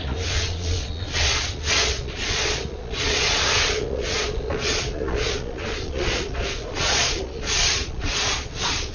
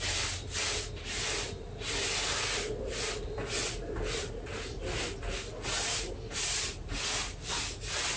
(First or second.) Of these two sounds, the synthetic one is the first